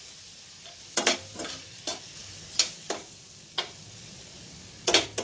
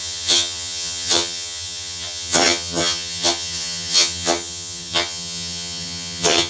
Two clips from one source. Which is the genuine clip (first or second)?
first